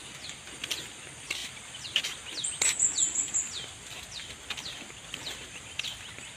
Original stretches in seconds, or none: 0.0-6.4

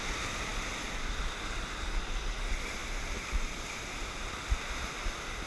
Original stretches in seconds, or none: 0.0-5.5

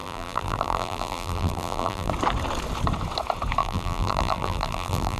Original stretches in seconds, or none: 2.1-3.6

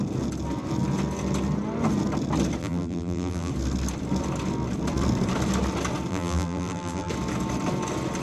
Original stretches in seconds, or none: 0.0-2.6; 3.5-6.1; 7.1-8.2

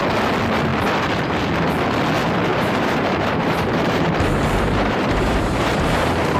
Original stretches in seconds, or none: 0.0-2.5

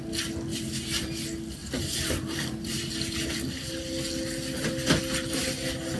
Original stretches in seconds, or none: 0.0-0.5; 1.1-1.6; 2.9-6.0